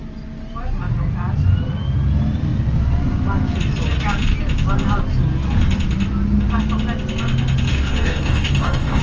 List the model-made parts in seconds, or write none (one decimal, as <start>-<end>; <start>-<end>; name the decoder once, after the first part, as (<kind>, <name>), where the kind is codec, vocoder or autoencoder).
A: 7.7-9.0 (codec, DAC)